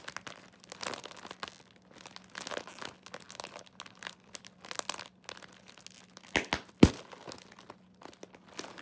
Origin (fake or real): real